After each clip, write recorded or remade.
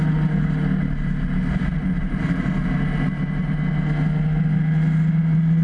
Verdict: recorded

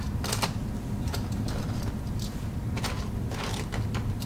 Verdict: recorded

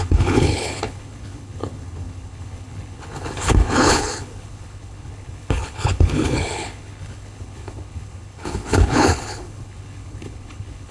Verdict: remade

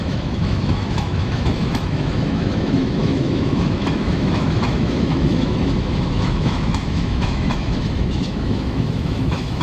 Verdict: remade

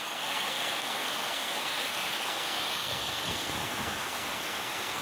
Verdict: remade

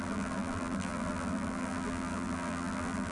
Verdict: remade